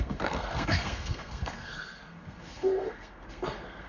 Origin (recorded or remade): remade